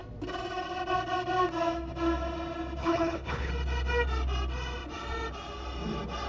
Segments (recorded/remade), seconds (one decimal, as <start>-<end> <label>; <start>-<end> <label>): 0.0-2.8 recorded; 2.8-3.5 remade; 3.5-6.3 recorded